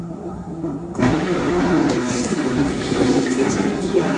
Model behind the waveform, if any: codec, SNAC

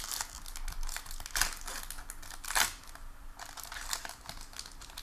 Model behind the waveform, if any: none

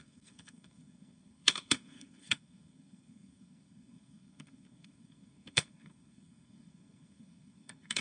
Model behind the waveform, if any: codec, SNAC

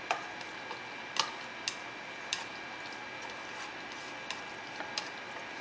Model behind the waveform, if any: none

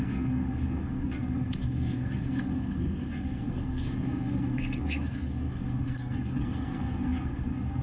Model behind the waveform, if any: codec, SNAC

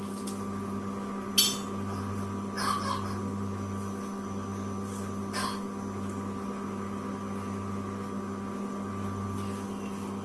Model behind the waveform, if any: none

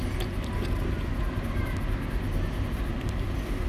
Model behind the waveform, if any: none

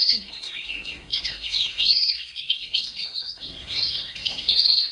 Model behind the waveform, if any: codec, SNAC